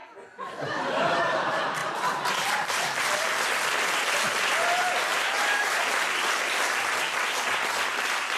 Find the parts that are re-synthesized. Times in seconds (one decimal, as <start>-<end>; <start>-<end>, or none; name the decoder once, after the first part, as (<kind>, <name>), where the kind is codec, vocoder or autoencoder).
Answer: 0.0-1.1 (vocoder, BigVGAN v2); 5.1-6.0

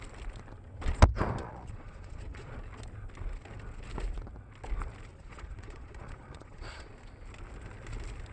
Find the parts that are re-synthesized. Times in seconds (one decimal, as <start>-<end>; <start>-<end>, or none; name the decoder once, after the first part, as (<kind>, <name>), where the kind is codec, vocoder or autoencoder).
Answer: 1.4-2.5 (vocoder, Vocos); 5.1-6.9

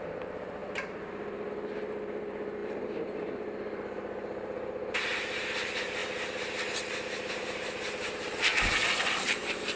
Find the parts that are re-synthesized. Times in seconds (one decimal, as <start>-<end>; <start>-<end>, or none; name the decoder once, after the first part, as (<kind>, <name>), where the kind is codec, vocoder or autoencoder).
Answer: 0.0-6.0 (vocoder, BigVGAN v2); 7.3-9.8

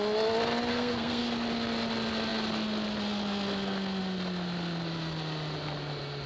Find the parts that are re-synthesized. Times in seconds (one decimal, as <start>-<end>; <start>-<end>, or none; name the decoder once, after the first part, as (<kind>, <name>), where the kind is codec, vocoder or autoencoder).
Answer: 0.7-1.2 (codec, SNAC)